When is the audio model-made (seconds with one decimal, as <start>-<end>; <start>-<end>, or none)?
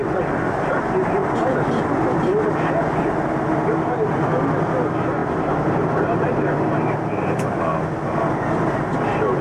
5.2-7.6